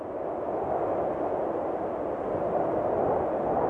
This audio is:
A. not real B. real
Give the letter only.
B